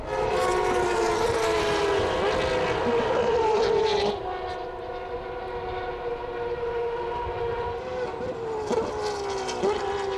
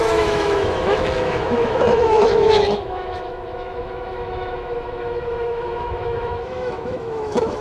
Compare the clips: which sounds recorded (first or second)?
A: first